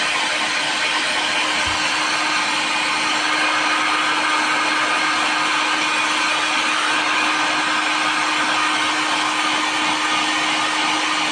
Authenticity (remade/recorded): recorded